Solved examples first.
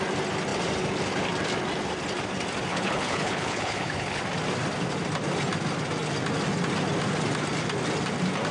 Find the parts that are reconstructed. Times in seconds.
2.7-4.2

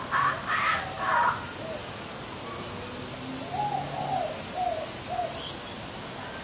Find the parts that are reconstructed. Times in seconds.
none

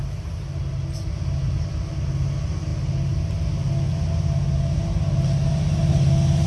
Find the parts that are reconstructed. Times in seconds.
none

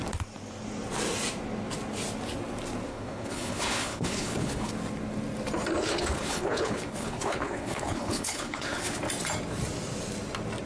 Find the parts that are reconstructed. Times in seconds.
2.9-4.7; 5.8-9.0

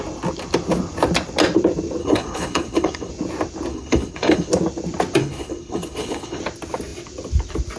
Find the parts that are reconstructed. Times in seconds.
2.0-3.1; 3.7-4.5; 5.2-6.4

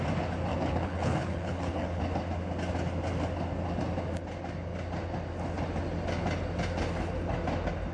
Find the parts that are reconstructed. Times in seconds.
0.5-2.0

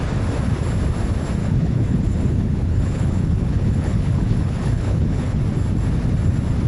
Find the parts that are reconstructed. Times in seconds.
1.4-5.4

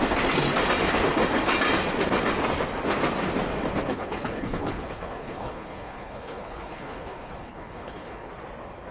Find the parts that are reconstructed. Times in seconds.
3.9-8.3